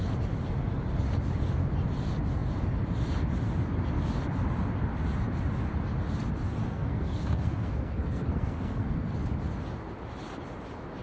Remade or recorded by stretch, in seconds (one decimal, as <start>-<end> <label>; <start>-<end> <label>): 0.0-6.6 recorded; 6.6-9.1 remade; 9.1-11.0 recorded